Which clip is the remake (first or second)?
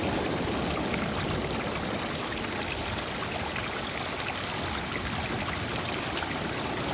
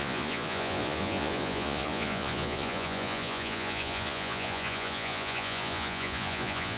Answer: second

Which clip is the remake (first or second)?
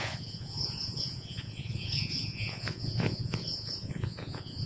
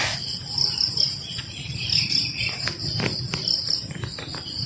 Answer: first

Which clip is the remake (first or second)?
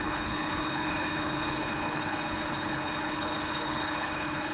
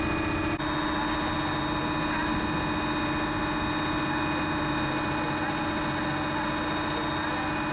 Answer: first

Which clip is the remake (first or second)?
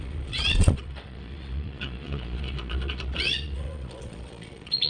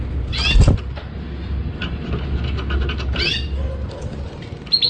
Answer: first